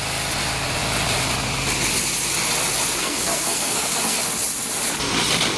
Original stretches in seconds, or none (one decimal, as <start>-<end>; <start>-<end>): 0.0-3.0; 4.2-5.6